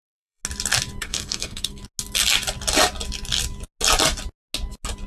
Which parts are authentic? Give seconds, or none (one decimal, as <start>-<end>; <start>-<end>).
0.4-1.0; 1.8-5.1